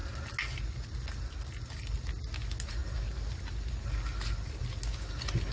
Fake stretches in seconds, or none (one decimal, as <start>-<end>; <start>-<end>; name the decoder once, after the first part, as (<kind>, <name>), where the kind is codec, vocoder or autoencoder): none